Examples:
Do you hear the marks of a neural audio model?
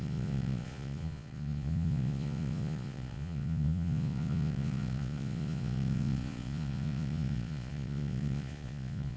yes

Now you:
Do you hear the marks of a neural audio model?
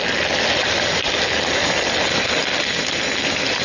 no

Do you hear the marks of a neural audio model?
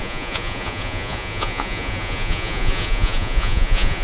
yes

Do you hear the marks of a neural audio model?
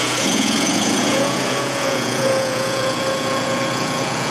yes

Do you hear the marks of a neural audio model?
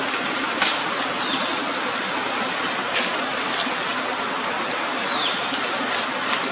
no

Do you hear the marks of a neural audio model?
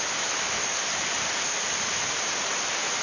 no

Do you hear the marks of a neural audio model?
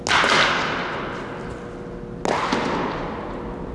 no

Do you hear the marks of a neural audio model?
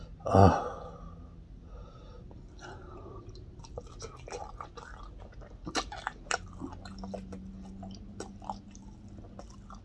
no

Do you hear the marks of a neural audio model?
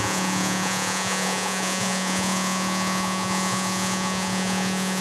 yes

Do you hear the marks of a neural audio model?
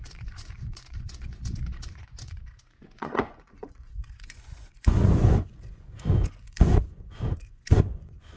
yes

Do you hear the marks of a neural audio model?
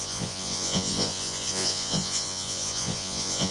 yes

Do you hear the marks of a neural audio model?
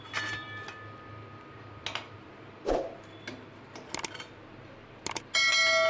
no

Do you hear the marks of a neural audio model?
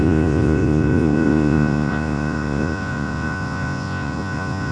yes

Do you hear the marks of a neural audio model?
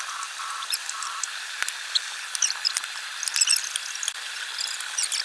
no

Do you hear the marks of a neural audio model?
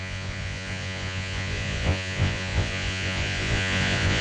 yes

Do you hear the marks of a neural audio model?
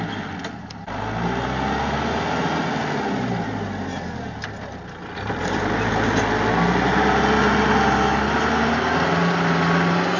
no